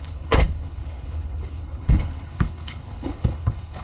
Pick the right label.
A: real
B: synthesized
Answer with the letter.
B